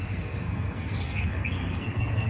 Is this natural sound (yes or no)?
no